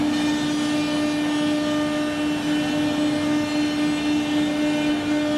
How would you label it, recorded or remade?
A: recorded